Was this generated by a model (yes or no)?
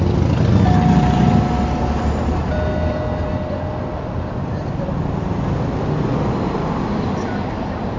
no